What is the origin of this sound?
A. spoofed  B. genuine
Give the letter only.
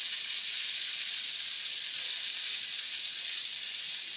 B